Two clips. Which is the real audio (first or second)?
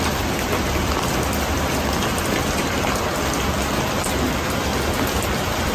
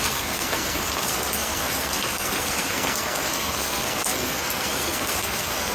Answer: first